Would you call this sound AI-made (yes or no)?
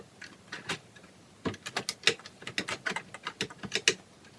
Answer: no